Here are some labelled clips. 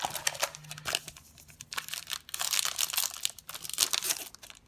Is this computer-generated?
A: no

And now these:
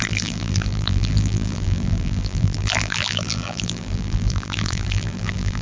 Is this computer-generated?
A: yes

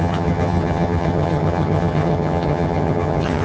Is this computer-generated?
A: yes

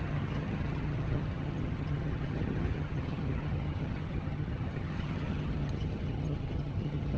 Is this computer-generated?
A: yes